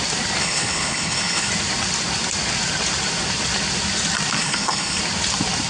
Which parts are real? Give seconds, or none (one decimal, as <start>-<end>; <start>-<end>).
0.0-0.4; 1.5-4.4; 5.0-5.7